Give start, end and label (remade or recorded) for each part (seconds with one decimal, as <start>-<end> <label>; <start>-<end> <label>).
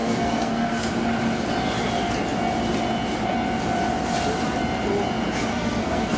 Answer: 0.0-0.9 remade; 0.9-5.5 recorded; 5.5-6.2 remade